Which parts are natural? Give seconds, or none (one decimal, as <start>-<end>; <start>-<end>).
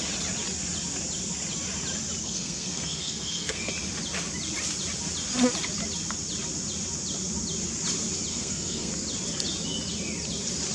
0.0-2.2; 3.7-8.3; 8.9-10.7